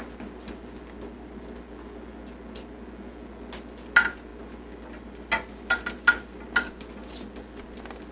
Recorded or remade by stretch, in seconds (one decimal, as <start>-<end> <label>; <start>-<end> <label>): 0.0-8.1 recorded